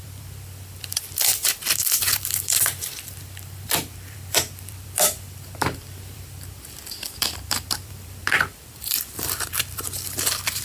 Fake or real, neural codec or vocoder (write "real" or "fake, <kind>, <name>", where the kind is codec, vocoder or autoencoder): fake, vocoder, BigVGAN v2